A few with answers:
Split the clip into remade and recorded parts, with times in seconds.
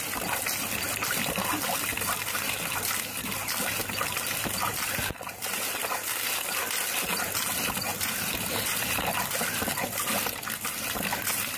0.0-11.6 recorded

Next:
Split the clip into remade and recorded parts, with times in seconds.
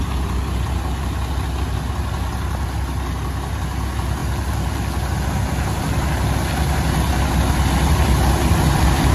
0.0-9.1 recorded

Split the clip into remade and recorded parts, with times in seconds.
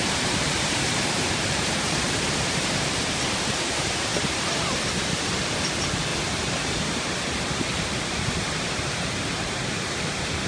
0.0-4.1 remade; 4.1-4.8 recorded; 4.8-6.1 remade; 6.1-7.4 recorded; 7.4-10.5 remade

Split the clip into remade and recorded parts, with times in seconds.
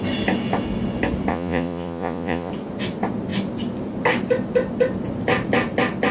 0.0-1.3 recorded; 1.3-2.5 remade; 2.5-6.1 recorded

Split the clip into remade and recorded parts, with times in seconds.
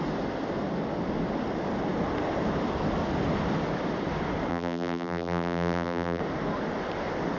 0.0-4.5 recorded; 4.5-6.2 remade; 6.2-7.4 recorded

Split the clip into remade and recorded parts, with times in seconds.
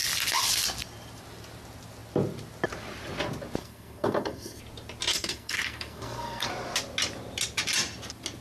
0.0-3.6 recorded; 3.6-4.6 remade; 4.6-5.1 recorded; 5.1-6.5 remade; 6.5-8.4 recorded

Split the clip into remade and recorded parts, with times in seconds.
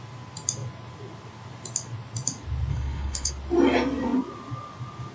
0.0-2.7 recorded; 2.7-3.3 remade; 3.3-5.1 recorded